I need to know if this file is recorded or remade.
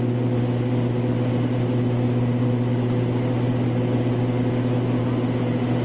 recorded